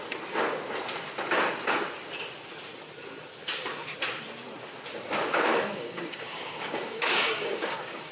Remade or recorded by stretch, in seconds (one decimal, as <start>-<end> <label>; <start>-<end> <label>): 0.0-5.5 recorded; 5.5-8.1 remade